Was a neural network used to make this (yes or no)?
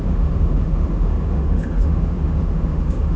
yes